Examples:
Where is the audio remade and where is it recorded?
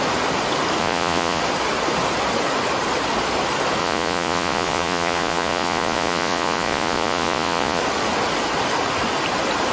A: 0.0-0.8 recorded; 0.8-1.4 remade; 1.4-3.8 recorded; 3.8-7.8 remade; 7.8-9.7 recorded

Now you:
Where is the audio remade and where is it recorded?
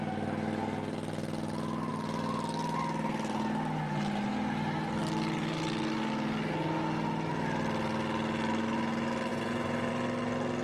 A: 0.0-9.3 recorded; 9.3-9.9 remade; 9.9-10.6 recorded